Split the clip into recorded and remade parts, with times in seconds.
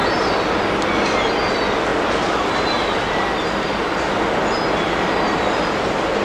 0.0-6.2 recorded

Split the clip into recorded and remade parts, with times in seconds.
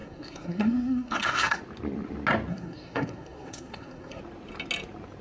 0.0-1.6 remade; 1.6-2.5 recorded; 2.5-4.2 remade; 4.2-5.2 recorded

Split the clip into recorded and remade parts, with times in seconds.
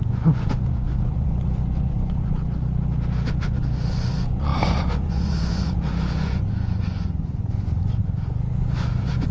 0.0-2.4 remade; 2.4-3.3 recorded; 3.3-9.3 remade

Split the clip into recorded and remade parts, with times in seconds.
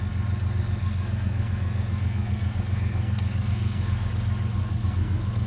0.0-0.8 recorded; 0.8-4.1 remade; 4.1-4.6 recorded; 4.6-5.5 remade